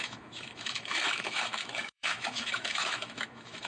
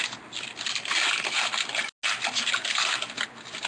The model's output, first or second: first